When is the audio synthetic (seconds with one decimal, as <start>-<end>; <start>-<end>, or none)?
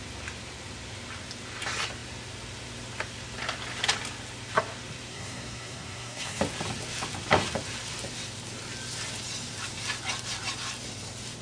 5.1-6.4